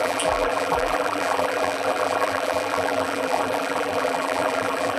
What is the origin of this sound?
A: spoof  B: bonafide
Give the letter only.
A